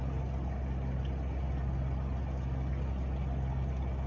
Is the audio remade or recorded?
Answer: recorded